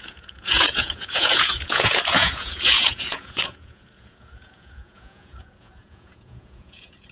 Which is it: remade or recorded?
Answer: remade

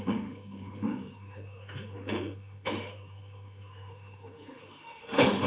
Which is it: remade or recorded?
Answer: remade